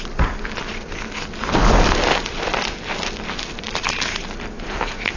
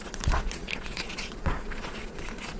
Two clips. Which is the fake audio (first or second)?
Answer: second